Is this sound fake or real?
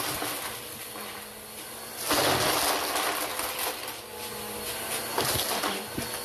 real